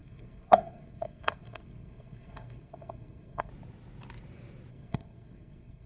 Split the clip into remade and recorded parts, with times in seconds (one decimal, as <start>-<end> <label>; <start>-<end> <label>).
0.0-3.5 remade; 3.5-4.7 recorded; 4.7-5.9 remade